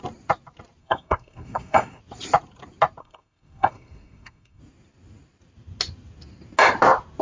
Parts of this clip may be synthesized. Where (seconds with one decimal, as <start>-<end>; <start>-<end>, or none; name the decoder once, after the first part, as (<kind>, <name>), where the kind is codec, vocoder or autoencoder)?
0.8-2.0 (codec, SNAC); 3.0-4.6